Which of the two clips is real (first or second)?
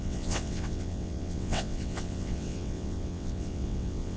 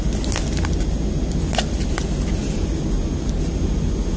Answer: second